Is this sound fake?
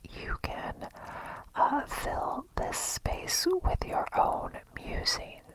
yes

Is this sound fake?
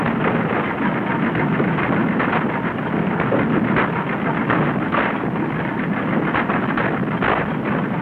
no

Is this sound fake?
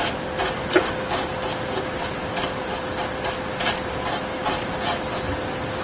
no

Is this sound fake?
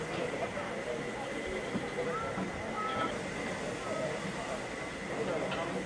no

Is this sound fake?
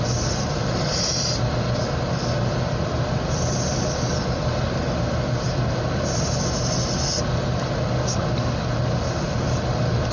no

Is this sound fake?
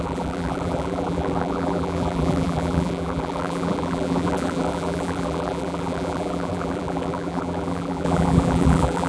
yes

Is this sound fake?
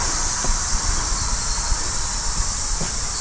yes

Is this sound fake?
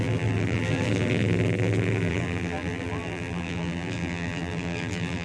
yes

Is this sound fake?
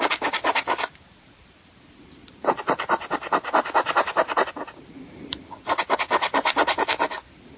yes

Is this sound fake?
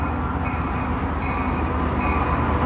no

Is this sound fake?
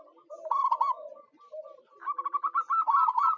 yes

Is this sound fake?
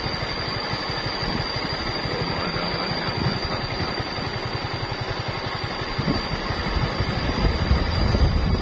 yes